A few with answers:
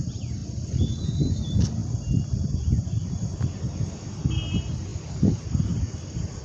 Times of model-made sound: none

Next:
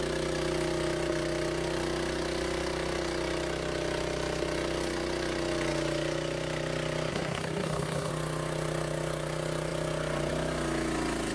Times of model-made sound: 7.1-8.1 (codec, SNAC)

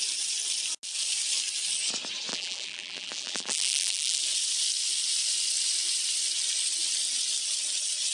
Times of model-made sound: 2.3-4.2 (vocoder, BigVGAN v2)

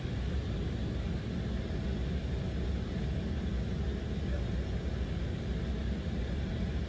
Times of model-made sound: none

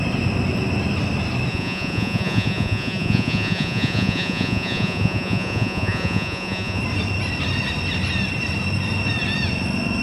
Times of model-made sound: 1.5-6.8 (vocoder, Vocos)

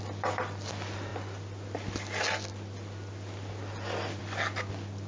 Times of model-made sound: none

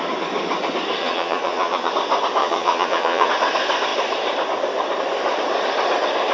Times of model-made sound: 1.0-1.9 (vocoder, Vocos); 2.4-3.3

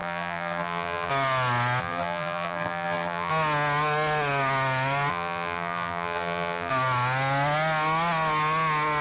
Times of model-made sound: 0.0-1.1 (vocoder, BigVGAN v2); 1.8-3.3; 5.1-6.7